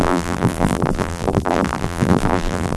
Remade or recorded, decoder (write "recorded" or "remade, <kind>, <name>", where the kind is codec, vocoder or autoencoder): remade, vocoder, BigVGAN v2